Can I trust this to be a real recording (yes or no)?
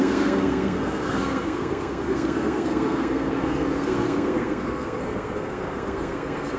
no